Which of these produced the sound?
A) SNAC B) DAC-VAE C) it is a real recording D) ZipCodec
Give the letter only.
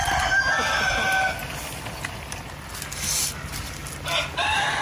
C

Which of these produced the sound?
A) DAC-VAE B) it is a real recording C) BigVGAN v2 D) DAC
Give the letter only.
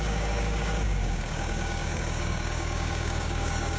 D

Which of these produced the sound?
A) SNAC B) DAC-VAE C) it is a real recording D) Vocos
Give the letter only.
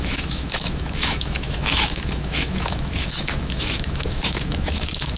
B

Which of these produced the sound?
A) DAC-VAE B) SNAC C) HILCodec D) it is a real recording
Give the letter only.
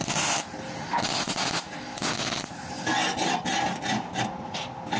D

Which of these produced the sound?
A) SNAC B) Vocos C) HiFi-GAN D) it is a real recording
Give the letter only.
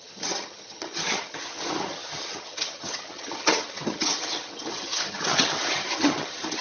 C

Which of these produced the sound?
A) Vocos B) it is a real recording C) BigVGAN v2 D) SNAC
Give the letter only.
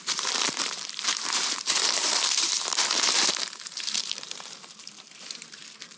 C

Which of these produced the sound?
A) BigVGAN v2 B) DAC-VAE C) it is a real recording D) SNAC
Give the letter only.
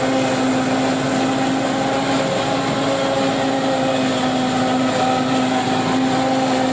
C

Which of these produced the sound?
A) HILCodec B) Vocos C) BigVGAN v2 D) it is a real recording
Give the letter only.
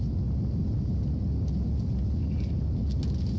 D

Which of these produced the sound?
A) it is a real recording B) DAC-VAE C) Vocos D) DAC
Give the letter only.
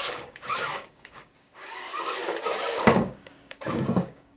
D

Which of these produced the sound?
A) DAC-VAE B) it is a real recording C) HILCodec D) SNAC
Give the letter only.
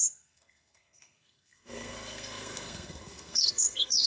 D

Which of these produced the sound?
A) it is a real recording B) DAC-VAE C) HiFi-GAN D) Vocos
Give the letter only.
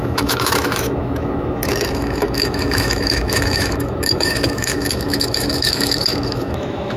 B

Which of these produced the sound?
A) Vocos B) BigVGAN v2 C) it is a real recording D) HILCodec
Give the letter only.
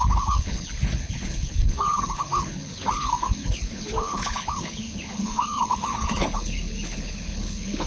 D